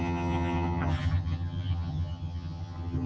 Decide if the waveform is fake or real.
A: fake